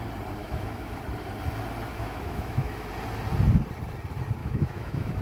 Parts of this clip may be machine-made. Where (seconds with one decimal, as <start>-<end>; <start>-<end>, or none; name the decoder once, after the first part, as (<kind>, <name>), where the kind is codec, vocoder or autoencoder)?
0.4-1.0 (autoencoder, DAC-VAE); 1.9-2.9; 4.4-5.2